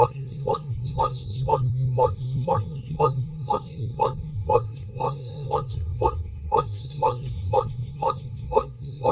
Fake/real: fake